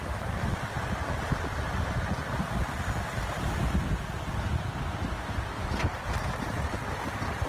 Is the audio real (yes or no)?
yes